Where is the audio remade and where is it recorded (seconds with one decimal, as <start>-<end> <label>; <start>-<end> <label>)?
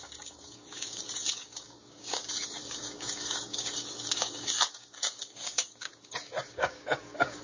0.0-7.4 remade